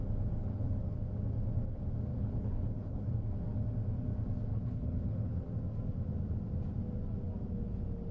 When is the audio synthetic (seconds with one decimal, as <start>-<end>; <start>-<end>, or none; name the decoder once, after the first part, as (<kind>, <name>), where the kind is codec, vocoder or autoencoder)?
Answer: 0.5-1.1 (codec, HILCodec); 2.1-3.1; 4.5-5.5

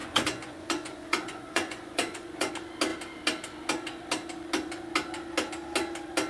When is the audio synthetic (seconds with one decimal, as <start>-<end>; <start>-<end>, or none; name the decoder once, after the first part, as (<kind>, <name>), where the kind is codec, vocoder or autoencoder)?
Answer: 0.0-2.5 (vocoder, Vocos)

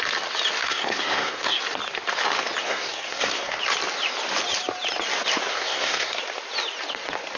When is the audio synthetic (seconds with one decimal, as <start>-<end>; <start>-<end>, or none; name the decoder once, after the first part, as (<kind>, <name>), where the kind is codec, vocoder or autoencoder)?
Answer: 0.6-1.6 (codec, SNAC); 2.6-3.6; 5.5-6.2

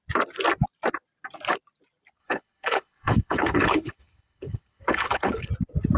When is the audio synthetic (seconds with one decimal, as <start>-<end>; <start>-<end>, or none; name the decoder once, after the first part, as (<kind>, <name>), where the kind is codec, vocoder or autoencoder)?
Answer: 2.2-5.5 (codec, HILCodec)

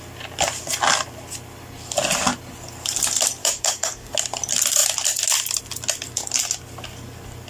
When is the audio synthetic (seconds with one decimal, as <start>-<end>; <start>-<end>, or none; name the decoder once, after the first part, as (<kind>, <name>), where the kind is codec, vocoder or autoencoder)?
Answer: 3.4-4.1 (codec, DAC)